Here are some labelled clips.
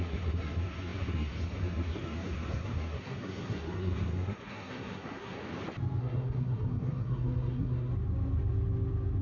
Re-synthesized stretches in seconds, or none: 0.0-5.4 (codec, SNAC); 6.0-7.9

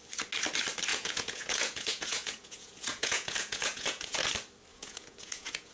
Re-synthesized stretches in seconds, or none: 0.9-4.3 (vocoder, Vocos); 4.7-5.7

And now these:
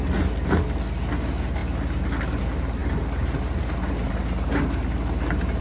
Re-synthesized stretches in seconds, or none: none

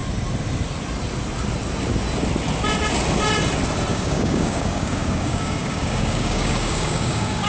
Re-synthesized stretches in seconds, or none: 3.9-7.5 (codec, DAC)

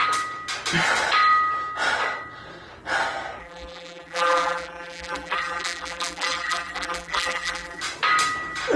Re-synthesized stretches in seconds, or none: 3.4-7.8 (vocoder, BigVGAN v2)

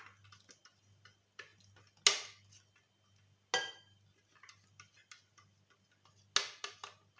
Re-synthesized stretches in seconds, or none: none